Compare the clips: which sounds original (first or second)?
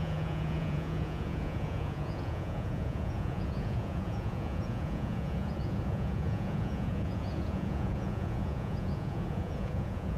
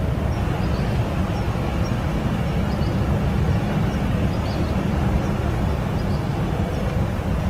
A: second